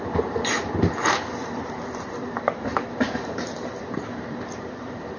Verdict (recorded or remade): remade